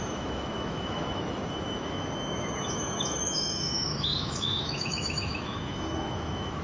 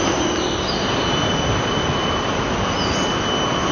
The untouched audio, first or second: second